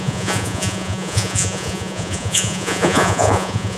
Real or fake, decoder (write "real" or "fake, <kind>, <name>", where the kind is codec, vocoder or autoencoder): fake, vocoder, Vocos